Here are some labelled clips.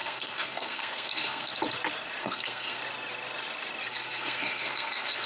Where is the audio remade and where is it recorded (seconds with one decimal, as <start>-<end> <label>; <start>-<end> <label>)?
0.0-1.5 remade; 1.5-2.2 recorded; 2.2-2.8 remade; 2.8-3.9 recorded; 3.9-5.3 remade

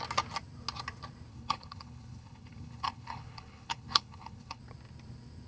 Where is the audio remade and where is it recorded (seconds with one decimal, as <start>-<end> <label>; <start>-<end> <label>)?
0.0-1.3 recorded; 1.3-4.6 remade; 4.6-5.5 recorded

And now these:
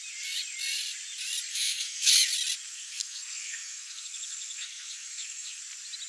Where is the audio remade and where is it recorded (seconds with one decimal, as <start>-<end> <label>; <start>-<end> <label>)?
0.0-1.5 recorded; 1.5-2.1 remade; 2.1-2.7 recorded; 2.7-5.6 remade; 5.6-6.1 recorded

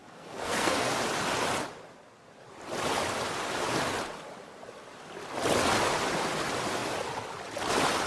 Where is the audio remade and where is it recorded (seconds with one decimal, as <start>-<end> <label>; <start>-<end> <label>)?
0.0-0.9 remade; 0.9-8.1 recorded

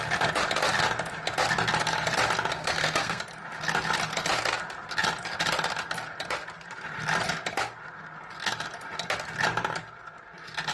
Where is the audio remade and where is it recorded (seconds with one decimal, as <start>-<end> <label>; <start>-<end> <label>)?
0.0-2.6 recorded; 2.6-3.2 remade; 3.2-10.7 recorded